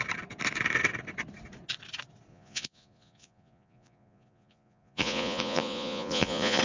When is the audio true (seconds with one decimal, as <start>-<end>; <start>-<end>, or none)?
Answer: 0.0-2.3